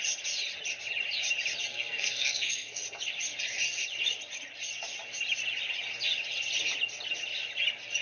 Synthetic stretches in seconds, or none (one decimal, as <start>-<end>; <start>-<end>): 1.7-2.8